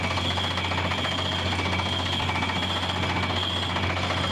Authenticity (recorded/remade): recorded